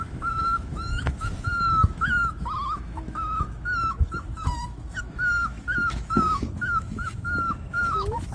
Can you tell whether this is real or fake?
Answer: fake